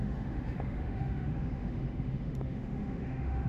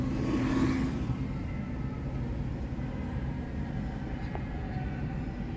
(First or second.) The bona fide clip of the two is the second